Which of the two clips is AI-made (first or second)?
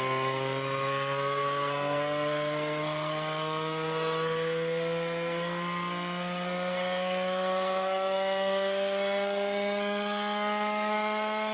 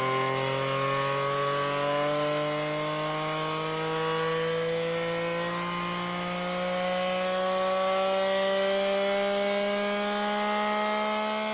first